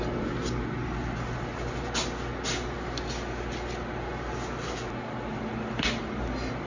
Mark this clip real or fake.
real